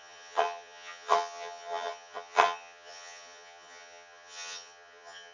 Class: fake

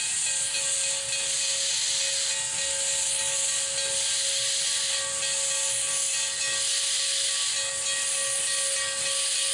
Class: real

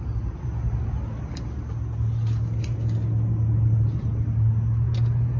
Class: real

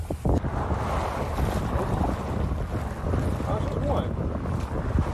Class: real